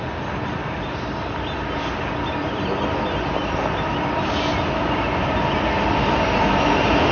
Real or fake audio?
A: real